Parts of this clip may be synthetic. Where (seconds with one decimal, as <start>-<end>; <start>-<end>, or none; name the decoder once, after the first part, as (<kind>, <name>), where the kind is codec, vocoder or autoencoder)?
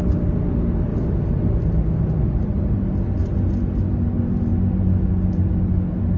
0.9-2.1 (vocoder, BigVGAN v2)